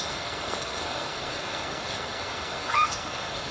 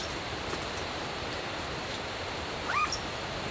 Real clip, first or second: second